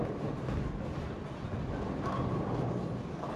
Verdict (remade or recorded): recorded